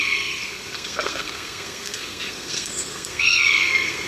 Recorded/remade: remade